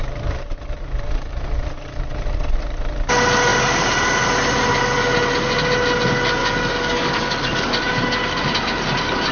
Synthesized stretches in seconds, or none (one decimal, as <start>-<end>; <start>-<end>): 6.4-7.8